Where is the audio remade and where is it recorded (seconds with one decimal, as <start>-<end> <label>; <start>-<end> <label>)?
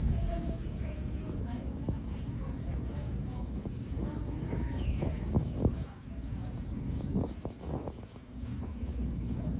0.0-9.6 remade